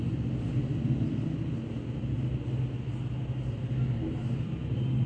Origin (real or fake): real